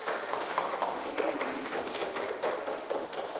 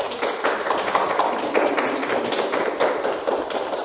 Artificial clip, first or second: first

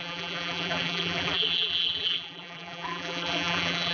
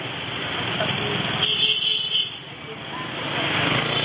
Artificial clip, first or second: first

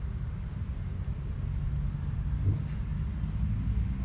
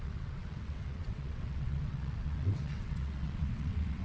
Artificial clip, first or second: second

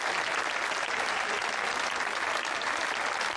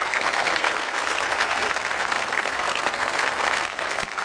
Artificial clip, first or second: second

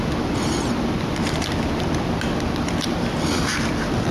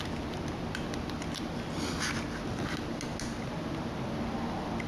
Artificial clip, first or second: first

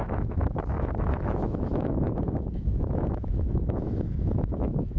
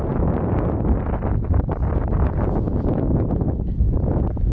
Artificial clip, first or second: first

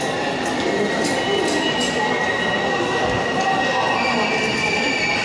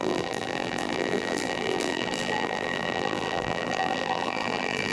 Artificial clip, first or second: second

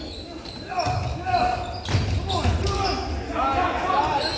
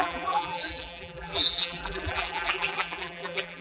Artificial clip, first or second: second